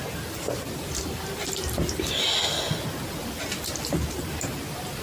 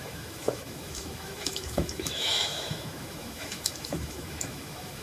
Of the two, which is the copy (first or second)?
second